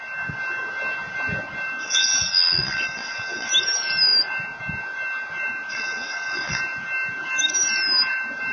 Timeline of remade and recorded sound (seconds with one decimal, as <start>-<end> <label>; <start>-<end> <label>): 0.0-1.8 recorded; 1.8-3.5 remade; 3.5-5.7 recorded; 5.7-6.6 remade; 6.6-8.5 recorded